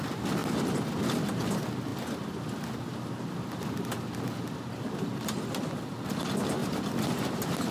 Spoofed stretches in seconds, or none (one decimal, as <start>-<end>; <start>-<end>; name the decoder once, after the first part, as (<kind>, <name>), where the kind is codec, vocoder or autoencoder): none